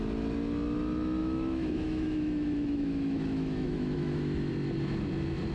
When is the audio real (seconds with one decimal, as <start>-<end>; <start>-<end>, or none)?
0.0-1.2; 4.5-5.5